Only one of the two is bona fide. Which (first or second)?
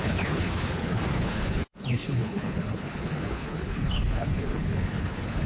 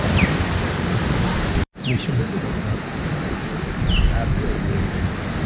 second